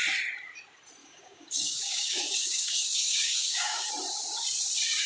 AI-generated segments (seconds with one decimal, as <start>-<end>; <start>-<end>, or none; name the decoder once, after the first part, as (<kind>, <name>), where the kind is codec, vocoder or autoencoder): 1.0-3.9 (codec, DAC)